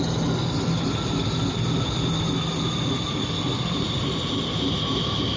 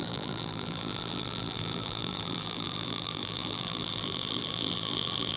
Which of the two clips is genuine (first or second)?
first